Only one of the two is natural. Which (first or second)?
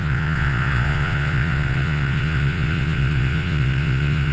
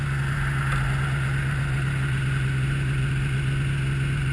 second